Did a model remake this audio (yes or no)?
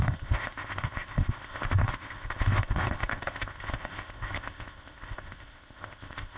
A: yes